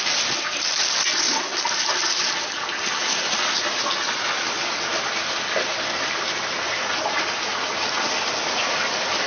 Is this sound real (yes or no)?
yes